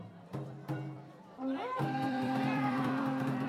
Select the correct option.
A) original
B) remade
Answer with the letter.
B